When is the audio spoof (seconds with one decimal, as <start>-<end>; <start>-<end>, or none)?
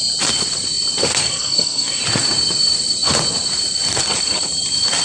1.2-2.0